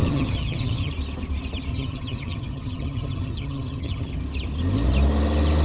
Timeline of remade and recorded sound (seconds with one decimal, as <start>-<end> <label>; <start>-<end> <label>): 0.0-0.9 remade; 0.9-1.7 recorded; 1.7-4.1 remade; 4.1-5.6 recorded